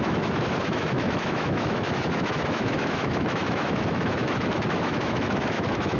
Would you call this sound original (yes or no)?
no